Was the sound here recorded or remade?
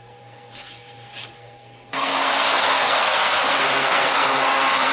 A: remade